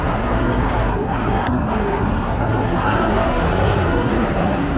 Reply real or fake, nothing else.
fake